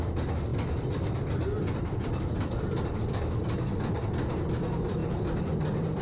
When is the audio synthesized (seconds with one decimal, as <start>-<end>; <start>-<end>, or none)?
0.5-4.1; 5.0-6.0